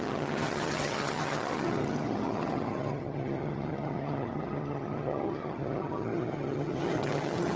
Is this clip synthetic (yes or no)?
yes